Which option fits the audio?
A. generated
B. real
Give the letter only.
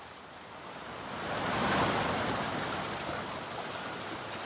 B